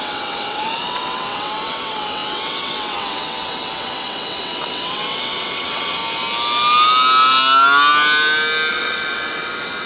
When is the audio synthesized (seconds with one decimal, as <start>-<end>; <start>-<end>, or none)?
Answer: 0.0-6.0; 8.7-9.9